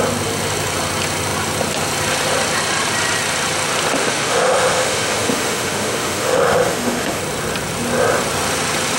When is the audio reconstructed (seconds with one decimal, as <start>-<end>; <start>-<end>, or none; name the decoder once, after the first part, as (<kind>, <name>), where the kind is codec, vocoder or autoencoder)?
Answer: 4.0-7.2 (autoencoder, DAC-VAE)